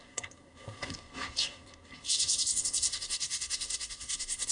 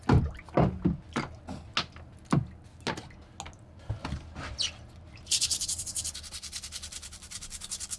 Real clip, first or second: second